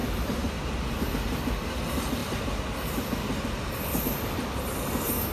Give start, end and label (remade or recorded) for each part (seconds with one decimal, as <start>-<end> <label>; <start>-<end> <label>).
0.0-5.3 recorded